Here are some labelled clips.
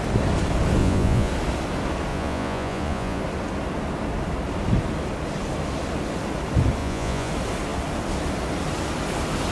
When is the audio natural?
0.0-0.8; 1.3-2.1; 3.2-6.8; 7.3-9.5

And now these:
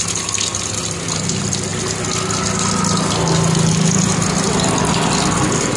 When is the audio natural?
0.0-5.8

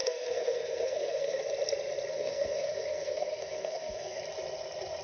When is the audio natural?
1.4-2.1; 4.2-5.0